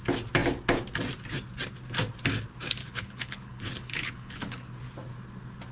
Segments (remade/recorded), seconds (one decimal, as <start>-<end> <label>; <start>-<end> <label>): 0.0-2.8 recorded; 2.8-4.7 remade; 4.7-5.7 recorded